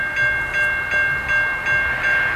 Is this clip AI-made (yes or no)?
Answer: no